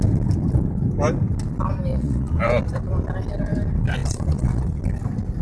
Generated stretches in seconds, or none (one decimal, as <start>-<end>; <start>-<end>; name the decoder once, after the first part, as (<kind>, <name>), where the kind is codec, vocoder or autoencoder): 1.9-2.4 (vocoder, Vocos); 4.0-4.8